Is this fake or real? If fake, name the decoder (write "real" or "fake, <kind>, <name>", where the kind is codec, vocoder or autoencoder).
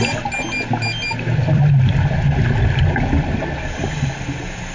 real